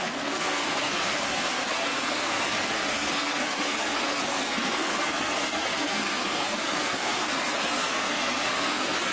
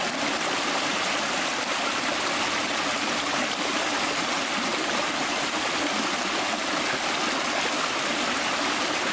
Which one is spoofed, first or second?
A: first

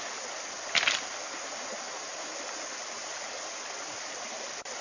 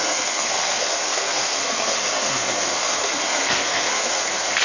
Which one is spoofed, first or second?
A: second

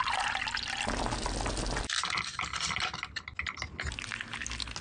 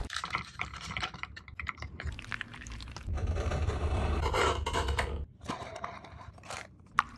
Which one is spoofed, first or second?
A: second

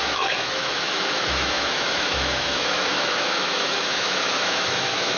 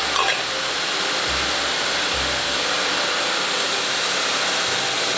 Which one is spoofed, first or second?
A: first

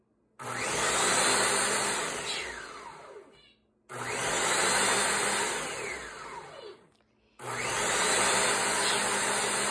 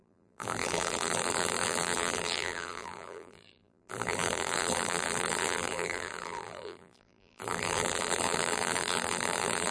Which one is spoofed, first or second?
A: second